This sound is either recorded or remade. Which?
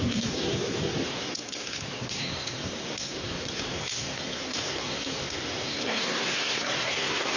remade